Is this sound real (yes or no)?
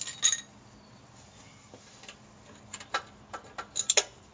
yes